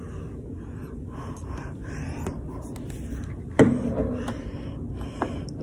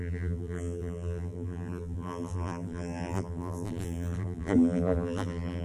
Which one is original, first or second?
first